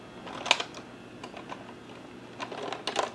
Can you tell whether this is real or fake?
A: real